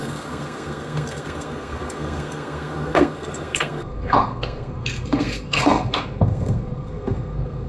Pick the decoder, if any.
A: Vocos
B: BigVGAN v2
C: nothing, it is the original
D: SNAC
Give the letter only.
D